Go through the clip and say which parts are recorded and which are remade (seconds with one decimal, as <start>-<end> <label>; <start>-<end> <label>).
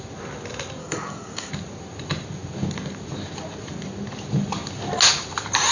0.0-0.8 recorded; 0.8-1.5 remade; 1.5-5.7 recorded